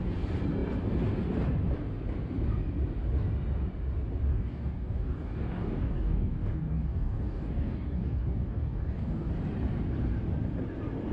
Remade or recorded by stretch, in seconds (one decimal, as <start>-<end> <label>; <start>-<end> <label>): 0.0-4.3 recorded; 4.3-9.3 remade; 9.3-11.1 recorded